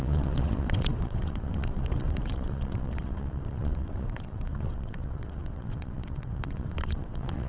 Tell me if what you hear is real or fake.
fake